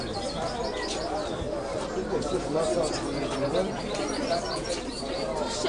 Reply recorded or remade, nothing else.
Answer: recorded